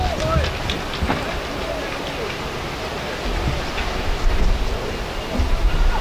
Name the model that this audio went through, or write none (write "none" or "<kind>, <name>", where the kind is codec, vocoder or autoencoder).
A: none